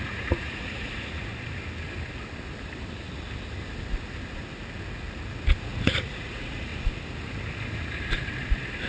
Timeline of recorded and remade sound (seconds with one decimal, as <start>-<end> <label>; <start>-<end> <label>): 0.0-1.3 remade; 1.3-5.6 recorded; 5.6-6.7 remade; 6.7-8.9 recorded